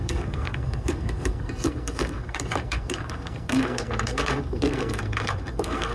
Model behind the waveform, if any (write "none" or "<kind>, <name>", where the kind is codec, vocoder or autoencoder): codec, SNAC